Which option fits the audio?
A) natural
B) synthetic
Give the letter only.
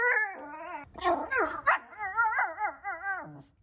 A